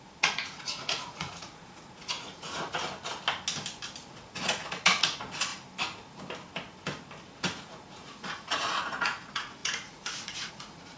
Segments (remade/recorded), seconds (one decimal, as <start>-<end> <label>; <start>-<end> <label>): 0.0-2.8 remade; 2.8-4.1 recorded; 4.1-5.5 remade; 5.5-7.6 recorded; 7.6-11.0 remade